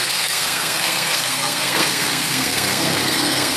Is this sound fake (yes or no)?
yes